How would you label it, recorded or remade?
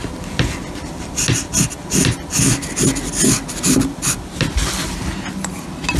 recorded